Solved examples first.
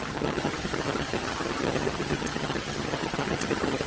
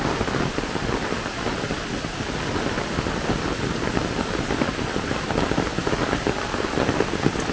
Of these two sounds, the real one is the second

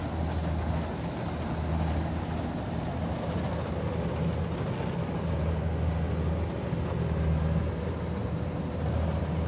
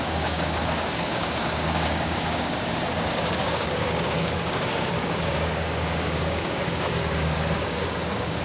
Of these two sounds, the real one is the first